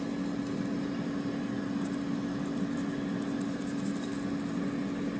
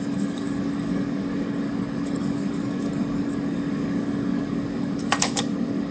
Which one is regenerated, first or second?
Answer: second